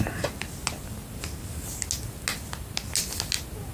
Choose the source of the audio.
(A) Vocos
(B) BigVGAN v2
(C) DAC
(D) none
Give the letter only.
D